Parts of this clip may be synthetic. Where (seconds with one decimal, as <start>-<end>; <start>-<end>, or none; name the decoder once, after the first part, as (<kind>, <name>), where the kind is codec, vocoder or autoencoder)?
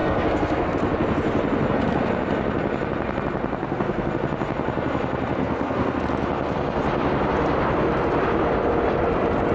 0.0-0.7 (codec, SNAC); 3.6-4.1; 5.4-6.0